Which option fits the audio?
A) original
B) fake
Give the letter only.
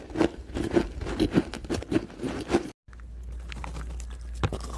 A